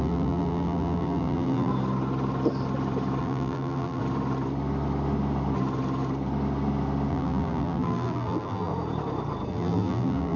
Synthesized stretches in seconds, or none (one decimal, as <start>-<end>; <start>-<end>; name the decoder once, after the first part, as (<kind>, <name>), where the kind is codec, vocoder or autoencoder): 0.0-1.7 (vocoder, BigVGAN v2); 3.2-4.0; 7.1-8.7; 9.5-10.4

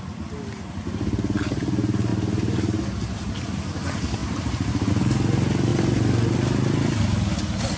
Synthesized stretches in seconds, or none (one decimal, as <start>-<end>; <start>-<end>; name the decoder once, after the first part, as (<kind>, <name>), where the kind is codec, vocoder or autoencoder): 2.1-2.8 (vocoder, BigVGAN v2); 4.2-4.9

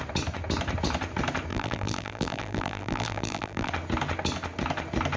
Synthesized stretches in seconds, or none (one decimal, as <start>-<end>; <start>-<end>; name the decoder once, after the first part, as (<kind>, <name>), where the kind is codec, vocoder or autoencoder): 1.5-3.7 (vocoder, BigVGAN v2)

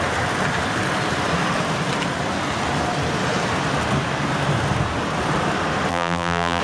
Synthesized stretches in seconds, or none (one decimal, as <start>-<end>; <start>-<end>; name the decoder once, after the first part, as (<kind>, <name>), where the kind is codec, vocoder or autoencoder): 5.9-6.6 (vocoder, BigVGAN v2)

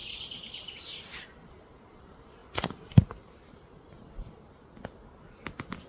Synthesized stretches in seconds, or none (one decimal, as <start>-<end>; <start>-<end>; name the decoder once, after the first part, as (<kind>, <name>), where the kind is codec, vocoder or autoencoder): none

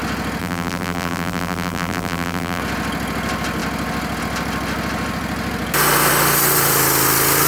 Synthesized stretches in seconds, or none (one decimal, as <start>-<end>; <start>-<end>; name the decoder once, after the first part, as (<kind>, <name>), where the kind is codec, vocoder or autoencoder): 0.4-2.6 (vocoder, BigVGAN v2)

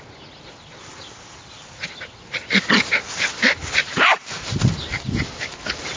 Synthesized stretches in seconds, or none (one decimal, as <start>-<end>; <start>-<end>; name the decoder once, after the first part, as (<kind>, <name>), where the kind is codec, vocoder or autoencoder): 3.6-4.5 (vocoder, BigVGAN v2)